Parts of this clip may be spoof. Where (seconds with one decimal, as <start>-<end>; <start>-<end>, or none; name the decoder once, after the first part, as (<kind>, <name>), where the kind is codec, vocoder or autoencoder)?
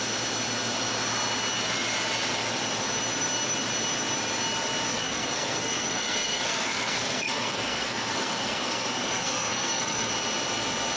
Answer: 4.9-10.1 (codec, SNAC)